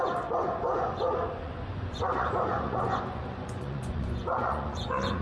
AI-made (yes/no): yes